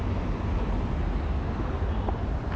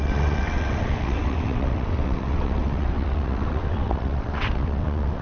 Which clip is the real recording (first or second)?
first